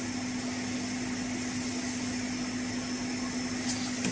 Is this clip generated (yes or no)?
no